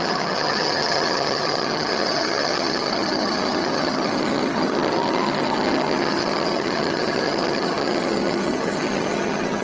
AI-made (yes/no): yes